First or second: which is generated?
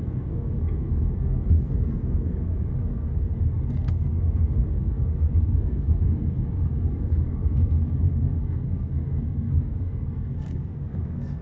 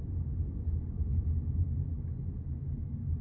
first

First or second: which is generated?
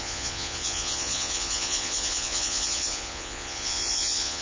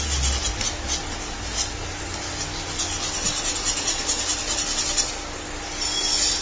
first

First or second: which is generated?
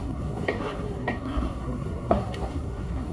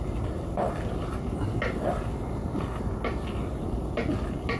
first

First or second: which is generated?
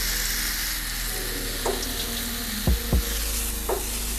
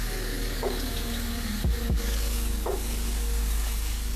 second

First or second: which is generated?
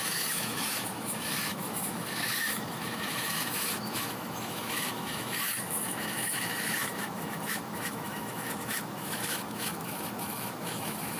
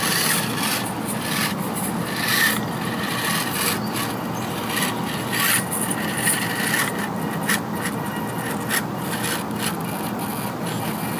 first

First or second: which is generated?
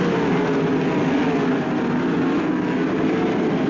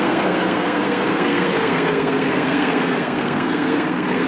second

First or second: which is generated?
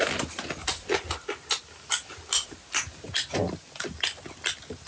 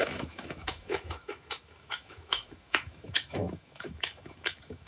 second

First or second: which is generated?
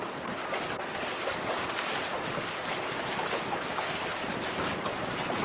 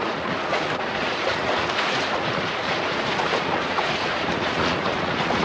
second